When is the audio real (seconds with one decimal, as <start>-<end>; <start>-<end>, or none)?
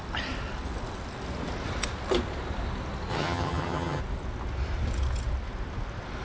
0.0-3.1; 4.0-6.2